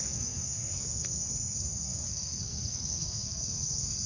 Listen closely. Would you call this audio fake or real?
fake